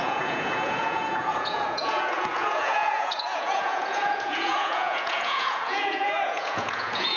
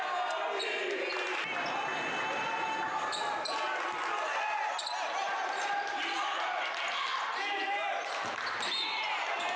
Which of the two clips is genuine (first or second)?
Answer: second